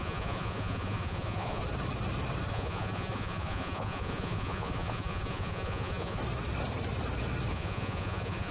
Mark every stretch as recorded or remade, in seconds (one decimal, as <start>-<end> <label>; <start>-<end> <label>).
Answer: 0.0-1.6 remade; 1.6-2.5 recorded; 2.5-6.2 remade; 6.2-7.5 recorded; 7.5-8.5 remade